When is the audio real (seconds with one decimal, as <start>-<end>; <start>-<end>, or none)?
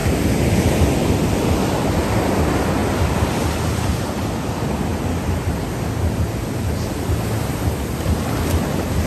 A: 0.0-9.1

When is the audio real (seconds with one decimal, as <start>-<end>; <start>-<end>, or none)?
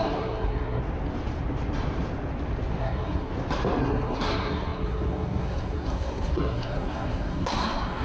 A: 0.8-2.8; 3.3-3.8